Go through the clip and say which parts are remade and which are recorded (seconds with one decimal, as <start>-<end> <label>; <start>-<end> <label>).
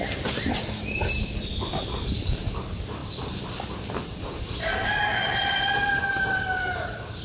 0.0-7.2 recorded